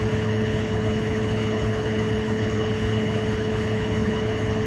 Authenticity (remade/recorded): remade